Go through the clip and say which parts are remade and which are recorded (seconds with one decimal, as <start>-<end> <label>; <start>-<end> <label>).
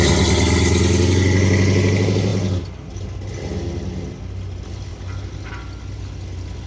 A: 0.0-6.7 recorded